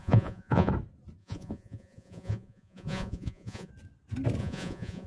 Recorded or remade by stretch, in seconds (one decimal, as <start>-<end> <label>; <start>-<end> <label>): 0.0-0.7 remade; 0.7-1.2 recorded; 1.2-3.7 remade; 3.7-4.4 recorded; 4.4-5.1 remade